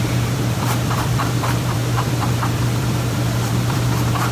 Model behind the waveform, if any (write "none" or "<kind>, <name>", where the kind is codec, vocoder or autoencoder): vocoder, BigVGAN v2